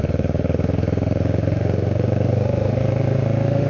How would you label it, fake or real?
fake